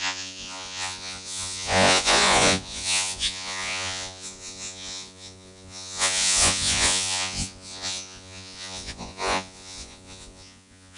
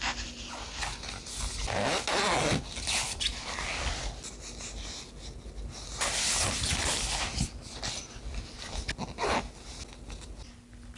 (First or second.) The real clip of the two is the second